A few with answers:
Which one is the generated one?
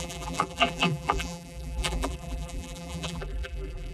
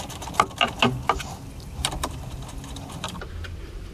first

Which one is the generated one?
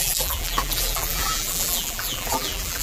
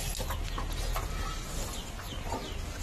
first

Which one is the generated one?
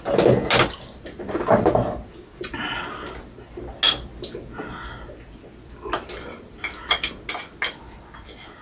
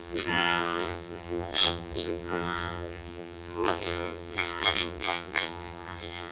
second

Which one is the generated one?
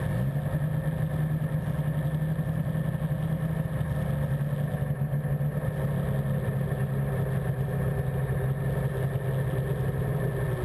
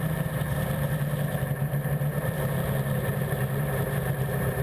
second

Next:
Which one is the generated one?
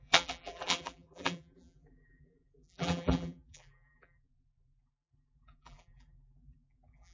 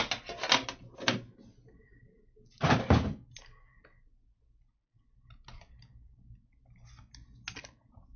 first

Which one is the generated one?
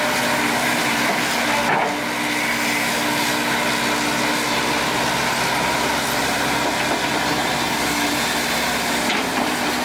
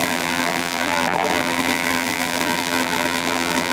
second